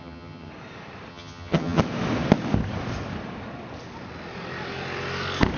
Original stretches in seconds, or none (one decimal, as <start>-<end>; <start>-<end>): 0.5-1.1; 1.8-5.6